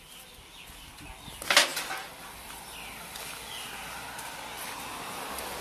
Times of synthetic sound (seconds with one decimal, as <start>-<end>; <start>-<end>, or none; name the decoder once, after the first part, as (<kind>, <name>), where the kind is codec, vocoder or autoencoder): 1.7-3.7 (vocoder, BigVGAN v2)